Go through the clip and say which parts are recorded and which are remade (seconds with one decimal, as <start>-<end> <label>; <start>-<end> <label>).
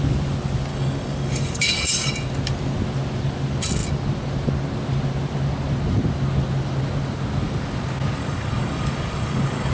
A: 0.0-0.7 recorded; 0.7-2.1 remade; 2.1-8.2 recorded; 8.2-9.7 remade